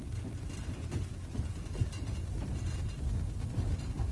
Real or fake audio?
real